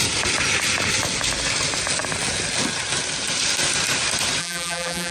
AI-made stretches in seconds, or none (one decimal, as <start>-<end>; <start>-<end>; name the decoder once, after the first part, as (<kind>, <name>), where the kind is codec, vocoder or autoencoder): 4.4-5.1 (vocoder, BigVGAN v2)